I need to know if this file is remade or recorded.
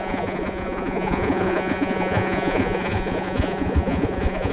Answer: remade